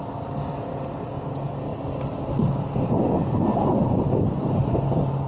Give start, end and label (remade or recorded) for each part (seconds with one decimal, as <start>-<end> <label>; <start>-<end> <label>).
0.0-5.3 recorded